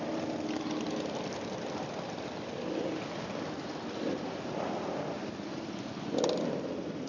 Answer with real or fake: real